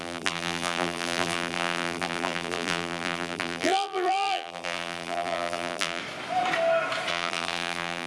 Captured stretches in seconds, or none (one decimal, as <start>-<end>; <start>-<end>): 6.0-7.1